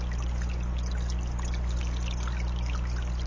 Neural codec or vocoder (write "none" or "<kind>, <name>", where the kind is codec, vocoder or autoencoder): none